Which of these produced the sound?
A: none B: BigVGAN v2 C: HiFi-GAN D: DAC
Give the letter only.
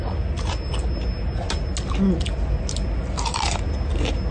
A